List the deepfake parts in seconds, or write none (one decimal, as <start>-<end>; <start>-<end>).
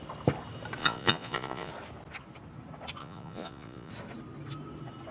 0.8-1.7; 3.0-3.9